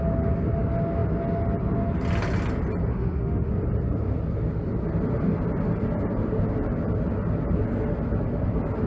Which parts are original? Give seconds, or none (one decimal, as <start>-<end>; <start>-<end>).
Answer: 0.0-2.9; 3.5-8.9